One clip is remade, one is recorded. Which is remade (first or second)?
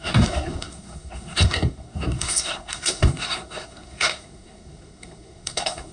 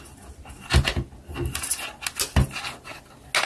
first